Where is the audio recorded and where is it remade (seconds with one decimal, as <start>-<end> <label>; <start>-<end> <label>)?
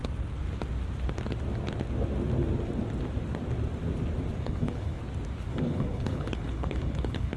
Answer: 0.0-4.4 recorded; 4.4-5.0 remade; 5.0-5.5 recorded; 5.5-7.4 remade